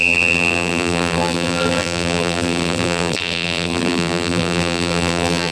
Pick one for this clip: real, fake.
fake